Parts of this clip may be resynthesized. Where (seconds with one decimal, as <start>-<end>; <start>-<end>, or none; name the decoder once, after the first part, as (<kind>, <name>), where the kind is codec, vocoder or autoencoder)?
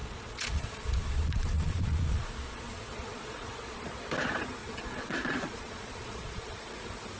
0.0-3.8 (vocoder, Vocos); 4.6-6.8